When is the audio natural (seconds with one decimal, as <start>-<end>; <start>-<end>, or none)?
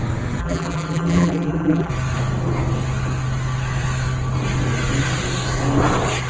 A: 0.0-0.4; 1.9-6.3